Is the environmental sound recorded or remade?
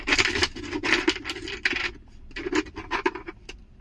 recorded